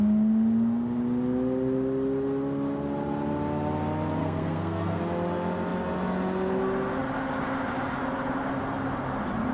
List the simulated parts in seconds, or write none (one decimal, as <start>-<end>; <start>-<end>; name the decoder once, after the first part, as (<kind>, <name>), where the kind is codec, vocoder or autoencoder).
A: 4.2-5.0 (codec, SNAC)